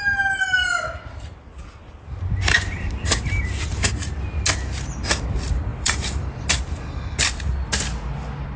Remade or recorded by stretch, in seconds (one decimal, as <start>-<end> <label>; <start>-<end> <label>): 0.0-2.4 recorded; 2.4-4.4 remade; 4.4-5.7 recorded; 5.7-6.5 remade; 6.5-8.6 recorded